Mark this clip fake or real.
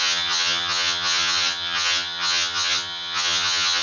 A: fake